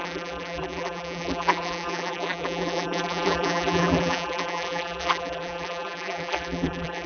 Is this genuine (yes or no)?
no